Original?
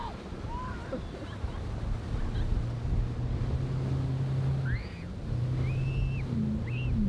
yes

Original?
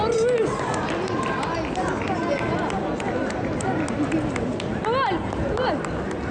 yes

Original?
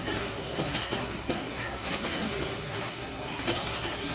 no